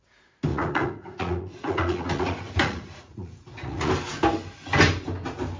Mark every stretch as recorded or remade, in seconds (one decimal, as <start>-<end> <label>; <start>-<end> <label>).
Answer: 0.0-0.5 recorded; 0.5-3.9 remade; 3.9-5.6 recorded